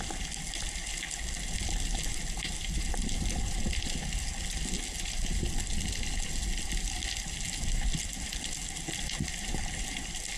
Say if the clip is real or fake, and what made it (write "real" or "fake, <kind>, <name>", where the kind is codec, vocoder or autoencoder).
real